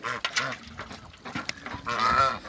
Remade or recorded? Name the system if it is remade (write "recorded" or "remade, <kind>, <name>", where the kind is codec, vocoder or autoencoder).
recorded